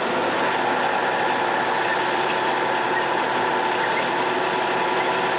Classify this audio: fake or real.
real